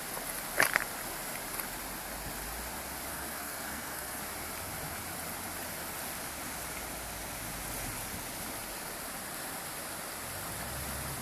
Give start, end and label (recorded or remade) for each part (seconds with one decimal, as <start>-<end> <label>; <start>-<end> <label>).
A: 0.0-3.1 recorded; 3.1-4.2 remade; 4.2-11.2 recorded